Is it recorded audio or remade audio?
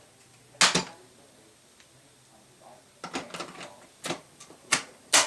recorded